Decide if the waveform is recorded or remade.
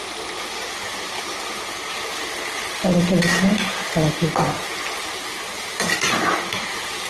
recorded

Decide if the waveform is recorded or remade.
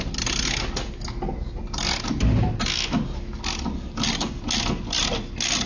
recorded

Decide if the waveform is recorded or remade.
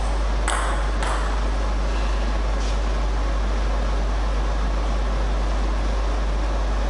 recorded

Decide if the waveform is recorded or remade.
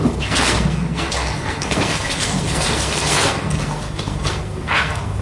remade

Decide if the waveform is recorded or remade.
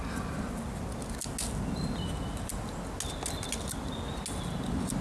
recorded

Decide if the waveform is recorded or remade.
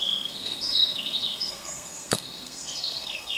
remade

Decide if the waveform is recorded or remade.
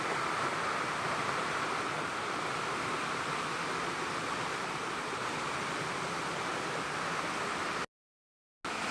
recorded